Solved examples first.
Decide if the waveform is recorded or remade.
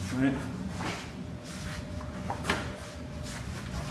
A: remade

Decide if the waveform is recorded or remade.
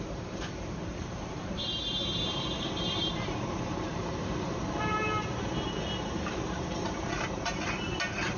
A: remade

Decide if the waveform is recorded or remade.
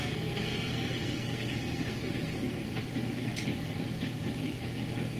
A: remade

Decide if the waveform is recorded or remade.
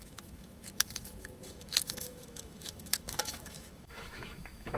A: remade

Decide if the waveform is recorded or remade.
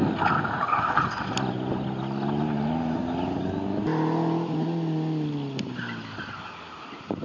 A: recorded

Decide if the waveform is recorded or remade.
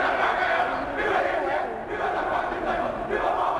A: recorded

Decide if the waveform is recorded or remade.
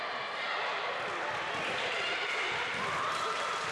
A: recorded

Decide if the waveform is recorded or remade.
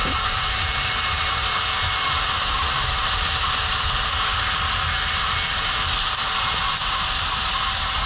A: remade